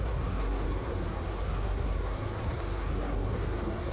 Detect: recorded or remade remade